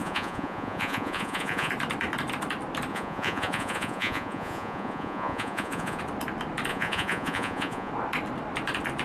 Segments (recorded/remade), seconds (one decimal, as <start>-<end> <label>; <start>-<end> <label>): 0.0-1.7 remade; 1.7-2.9 recorded; 2.9-6.0 remade; 6.0-6.7 recorded; 6.7-7.9 remade; 7.9-9.0 recorded